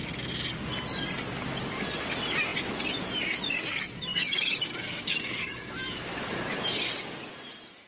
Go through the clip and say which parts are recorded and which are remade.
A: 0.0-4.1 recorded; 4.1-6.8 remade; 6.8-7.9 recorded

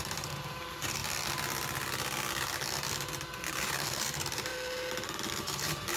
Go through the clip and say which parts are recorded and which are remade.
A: 0.0-1.0 remade; 1.0-3.5 recorded; 3.5-4.5 remade; 4.5-5.3 recorded; 5.3-6.0 remade